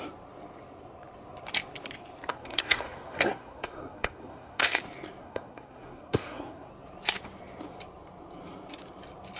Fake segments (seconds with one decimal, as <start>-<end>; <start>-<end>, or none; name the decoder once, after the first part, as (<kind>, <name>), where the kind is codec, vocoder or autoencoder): 2.3-4.8 (codec, SNAC); 5.2-6.7